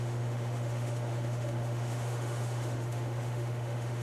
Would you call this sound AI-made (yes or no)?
yes